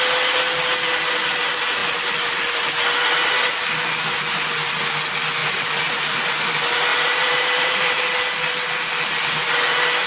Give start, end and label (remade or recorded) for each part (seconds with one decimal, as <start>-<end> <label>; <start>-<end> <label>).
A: 0.0-5.4 recorded; 5.4-6.5 remade; 6.5-6.9 recorded; 6.9-8.0 remade; 8.0-10.1 recorded